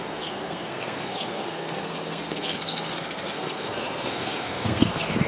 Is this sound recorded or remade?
remade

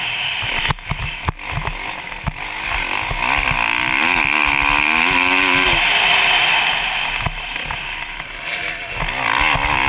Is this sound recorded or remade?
recorded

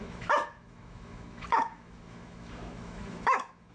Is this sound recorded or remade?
remade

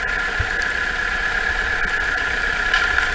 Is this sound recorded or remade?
recorded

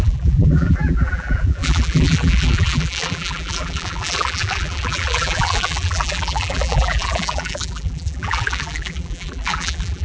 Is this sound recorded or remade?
remade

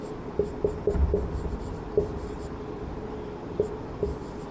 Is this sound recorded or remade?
recorded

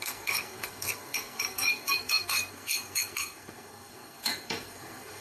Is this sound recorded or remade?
remade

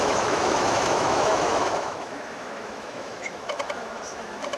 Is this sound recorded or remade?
remade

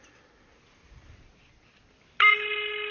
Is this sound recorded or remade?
recorded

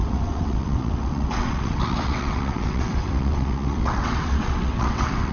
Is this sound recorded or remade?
remade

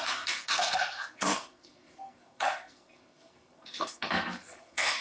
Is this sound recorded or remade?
remade